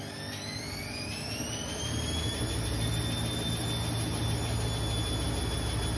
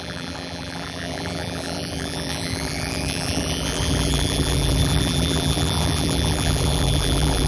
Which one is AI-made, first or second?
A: second